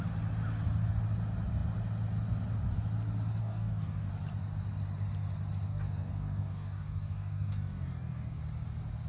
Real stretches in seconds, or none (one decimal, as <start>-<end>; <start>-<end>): 0.0-3.4; 4.1-5.7; 8.4-9.1